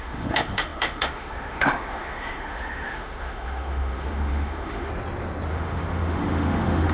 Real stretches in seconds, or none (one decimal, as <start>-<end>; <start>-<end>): 4.9-5.5